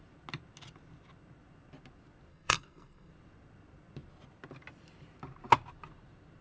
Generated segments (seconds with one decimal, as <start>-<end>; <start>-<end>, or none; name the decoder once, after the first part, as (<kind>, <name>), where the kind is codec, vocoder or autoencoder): 2.3-3.1 (codec, SNAC)